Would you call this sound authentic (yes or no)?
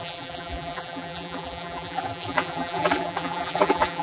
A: no